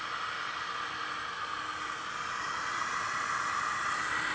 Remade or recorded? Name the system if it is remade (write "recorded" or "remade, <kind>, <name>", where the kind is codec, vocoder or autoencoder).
recorded